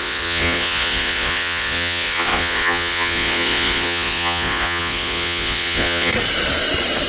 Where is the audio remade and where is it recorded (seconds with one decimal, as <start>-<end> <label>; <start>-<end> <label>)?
0.0-6.1 remade; 6.1-7.1 recorded